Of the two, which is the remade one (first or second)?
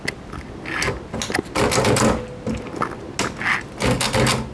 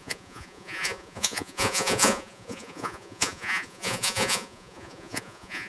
second